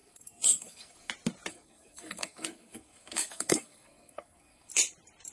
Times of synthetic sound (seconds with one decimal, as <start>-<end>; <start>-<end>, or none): 0.0-1.1; 1.5-4.7